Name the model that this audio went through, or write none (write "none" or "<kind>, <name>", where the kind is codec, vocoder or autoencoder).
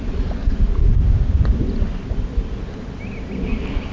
none